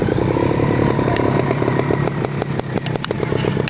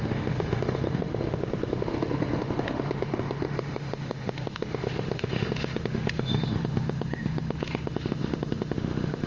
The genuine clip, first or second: first